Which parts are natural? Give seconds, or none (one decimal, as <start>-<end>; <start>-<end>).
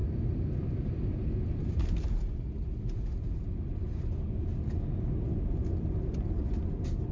0.0-7.1